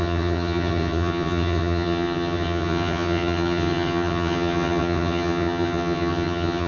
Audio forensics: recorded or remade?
remade